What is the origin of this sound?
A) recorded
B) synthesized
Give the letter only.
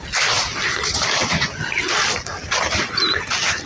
A